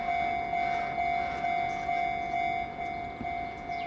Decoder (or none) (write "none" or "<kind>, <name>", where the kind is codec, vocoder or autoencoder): none